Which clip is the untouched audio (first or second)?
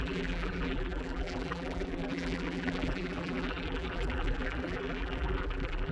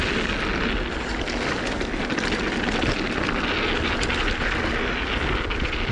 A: second